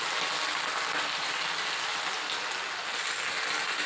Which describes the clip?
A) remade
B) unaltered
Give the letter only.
B